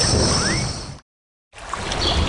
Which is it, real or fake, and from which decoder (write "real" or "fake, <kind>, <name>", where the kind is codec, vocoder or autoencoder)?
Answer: real